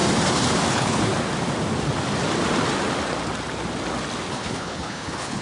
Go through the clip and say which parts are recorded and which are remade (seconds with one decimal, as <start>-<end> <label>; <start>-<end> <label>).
0.0-0.7 recorded; 0.7-1.1 remade; 1.1-4.3 recorded; 4.3-5.4 remade